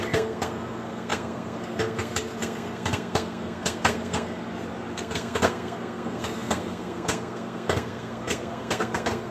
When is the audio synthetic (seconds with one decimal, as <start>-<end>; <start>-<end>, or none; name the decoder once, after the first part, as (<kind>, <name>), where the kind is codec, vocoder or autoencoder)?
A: 0.0-4.4 (codec, SNAC); 4.9-9.3